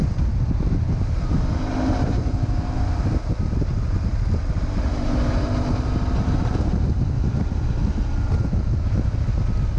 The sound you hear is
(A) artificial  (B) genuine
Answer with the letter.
B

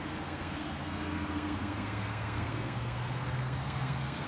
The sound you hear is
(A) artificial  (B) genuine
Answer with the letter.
A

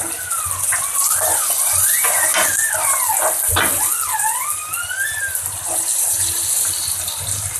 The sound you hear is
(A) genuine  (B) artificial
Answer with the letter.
A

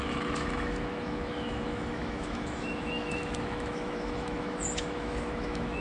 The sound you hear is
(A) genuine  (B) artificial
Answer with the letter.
B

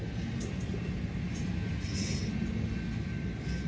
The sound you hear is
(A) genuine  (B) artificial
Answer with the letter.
A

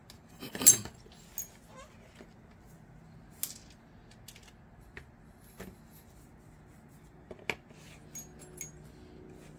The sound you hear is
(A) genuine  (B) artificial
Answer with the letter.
A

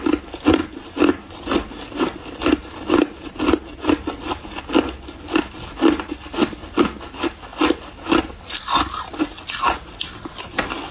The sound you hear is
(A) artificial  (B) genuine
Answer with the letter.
B